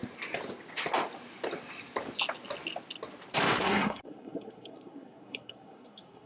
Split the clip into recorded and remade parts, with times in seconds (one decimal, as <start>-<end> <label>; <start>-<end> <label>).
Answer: 0.0-3.6 recorded; 3.6-6.3 remade